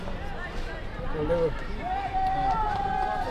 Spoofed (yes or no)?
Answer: no